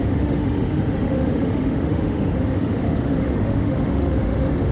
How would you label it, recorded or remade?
remade